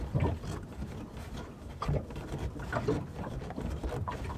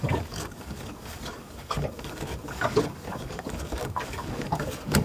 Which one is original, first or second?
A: first